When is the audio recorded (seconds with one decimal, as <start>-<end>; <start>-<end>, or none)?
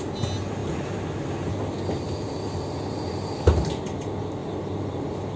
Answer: 0.0-5.4